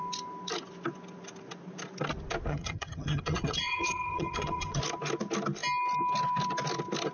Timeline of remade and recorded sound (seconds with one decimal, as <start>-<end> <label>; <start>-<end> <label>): 0.0-2.5 recorded; 2.5-4.8 remade; 4.8-7.1 recorded